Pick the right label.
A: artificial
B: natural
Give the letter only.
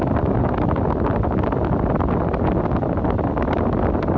B